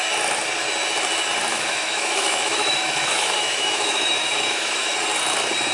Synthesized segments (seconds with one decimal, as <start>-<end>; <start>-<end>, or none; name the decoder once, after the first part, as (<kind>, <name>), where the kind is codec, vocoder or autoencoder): 1.5-4.9 (autoencoder, DAC-VAE)